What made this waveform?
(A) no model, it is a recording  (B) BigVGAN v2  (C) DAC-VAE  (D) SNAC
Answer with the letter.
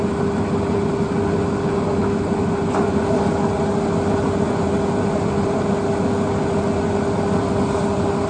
A